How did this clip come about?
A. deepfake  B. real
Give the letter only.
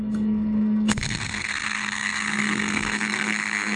A